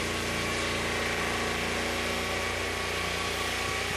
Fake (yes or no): no